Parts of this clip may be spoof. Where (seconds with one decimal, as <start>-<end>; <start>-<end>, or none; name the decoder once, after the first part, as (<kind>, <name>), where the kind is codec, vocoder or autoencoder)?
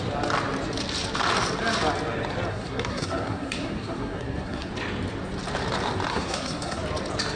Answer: 2.5-4.7 (codec, SNAC); 6.1-6.8